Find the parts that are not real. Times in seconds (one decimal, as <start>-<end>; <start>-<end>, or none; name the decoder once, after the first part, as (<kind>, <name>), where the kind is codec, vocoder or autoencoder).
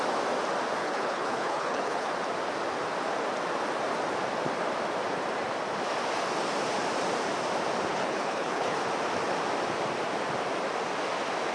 0.8-2.1 (codec, HILCodec); 7.9-8.9